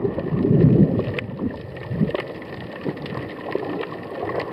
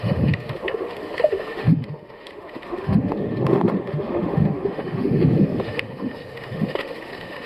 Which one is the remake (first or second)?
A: second